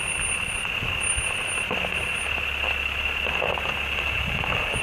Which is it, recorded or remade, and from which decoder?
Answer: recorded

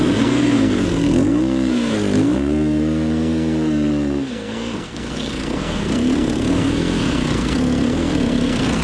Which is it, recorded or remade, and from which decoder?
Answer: remade, codec, SNAC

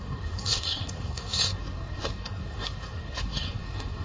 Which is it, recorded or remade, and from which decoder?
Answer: remade, codec, SNAC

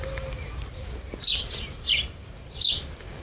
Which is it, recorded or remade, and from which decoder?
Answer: recorded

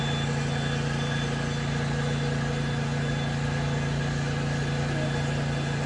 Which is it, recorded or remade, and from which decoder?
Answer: recorded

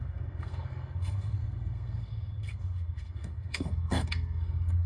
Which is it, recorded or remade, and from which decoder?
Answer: remade, codec, SNAC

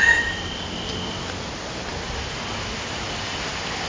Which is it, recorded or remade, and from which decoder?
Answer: recorded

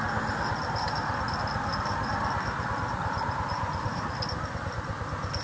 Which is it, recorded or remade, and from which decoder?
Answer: recorded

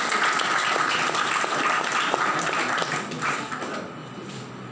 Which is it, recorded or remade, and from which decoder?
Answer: recorded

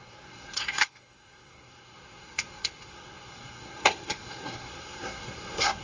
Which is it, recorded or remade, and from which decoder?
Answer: remade, codec, SNAC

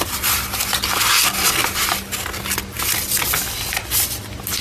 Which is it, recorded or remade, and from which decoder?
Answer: recorded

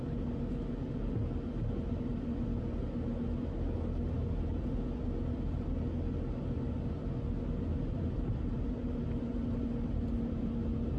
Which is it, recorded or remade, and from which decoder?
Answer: recorded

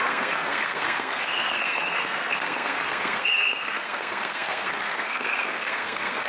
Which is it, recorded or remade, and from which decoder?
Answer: remade, codec, SNAC